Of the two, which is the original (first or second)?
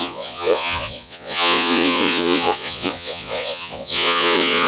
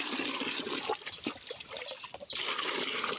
second